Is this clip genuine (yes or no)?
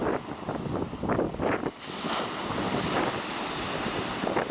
no